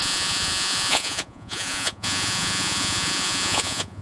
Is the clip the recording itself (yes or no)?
no